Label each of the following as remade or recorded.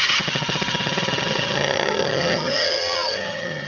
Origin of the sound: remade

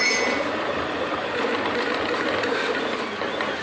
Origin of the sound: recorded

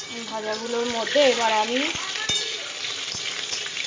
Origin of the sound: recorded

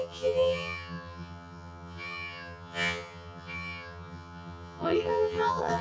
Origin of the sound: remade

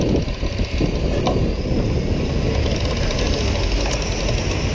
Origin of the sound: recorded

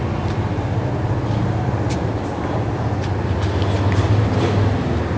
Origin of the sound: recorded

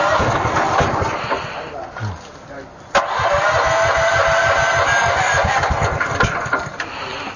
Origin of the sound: recorded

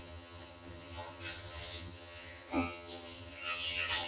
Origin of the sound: remade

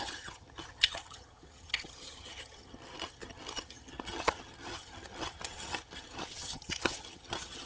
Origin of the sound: remade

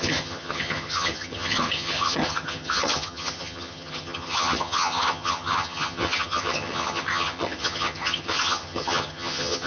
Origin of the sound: remade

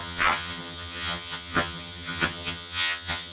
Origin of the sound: remade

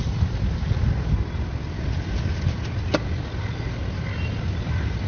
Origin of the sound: recorded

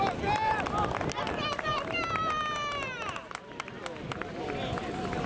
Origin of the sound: recorded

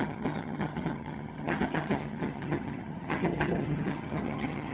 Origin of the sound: remade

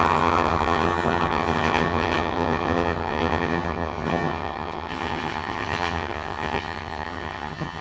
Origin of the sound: remade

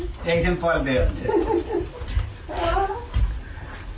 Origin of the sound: recorded